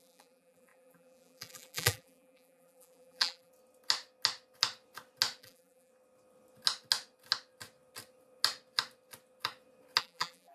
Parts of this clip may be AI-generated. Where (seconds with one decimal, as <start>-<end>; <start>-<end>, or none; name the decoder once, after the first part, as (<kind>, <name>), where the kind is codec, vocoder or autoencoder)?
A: 0.0-3.5 (vocoder, BigVGAN v2); 5.4-5.9; 10.0-10.5